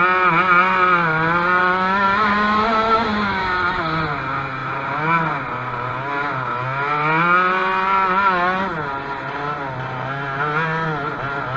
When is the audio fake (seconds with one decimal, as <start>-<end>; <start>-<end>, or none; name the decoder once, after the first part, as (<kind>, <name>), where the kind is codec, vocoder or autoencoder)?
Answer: 1.6-3.8 (autoencoder, DAC-VAE)